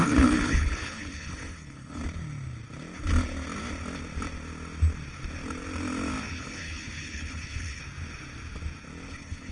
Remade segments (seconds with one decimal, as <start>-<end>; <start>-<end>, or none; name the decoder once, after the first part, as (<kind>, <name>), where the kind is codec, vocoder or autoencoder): 0.0-2.0 (codec, HILCodec); 6.3-7.8; 9.1-9.5